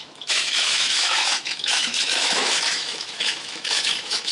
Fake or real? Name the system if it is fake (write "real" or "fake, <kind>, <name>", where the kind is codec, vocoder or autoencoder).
fake, autoencoder, DAC-VAE